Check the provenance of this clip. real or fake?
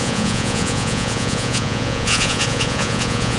fake